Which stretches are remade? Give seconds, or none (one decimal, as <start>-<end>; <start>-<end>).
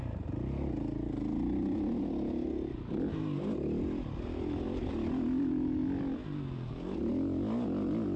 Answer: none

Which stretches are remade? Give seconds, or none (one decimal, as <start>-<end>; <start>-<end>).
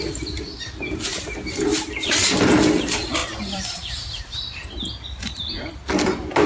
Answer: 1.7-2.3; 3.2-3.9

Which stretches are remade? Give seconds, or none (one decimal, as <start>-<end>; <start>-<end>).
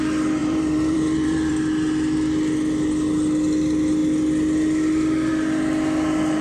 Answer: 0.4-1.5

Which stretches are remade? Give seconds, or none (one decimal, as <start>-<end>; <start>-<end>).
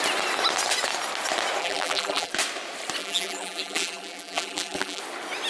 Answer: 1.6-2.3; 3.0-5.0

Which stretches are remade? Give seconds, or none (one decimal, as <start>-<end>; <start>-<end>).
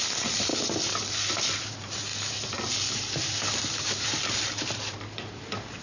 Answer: 0.0-0.5; 1.3-5.8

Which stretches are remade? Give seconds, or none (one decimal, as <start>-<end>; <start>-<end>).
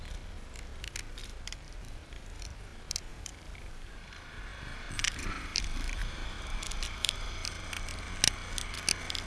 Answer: 1.2-2.6; 3.1-7.1